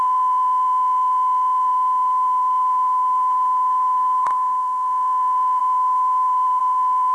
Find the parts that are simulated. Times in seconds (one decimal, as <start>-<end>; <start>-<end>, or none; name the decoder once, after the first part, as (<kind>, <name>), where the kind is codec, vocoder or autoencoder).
1.7-4.6 (autoencoder, DAC-VAE); 5.6-6.6